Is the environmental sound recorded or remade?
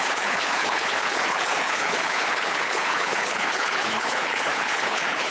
remade